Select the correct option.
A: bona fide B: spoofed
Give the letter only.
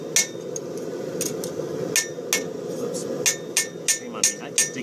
A